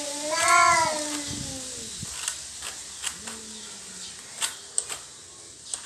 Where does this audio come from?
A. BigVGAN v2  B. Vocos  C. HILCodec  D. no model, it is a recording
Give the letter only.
D